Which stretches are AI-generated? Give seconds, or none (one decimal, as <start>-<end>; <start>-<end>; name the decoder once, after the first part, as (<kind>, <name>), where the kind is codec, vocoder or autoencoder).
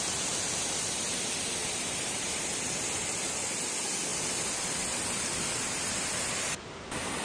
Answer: 1.6-2.5 (vocoder, BigVGAN v2)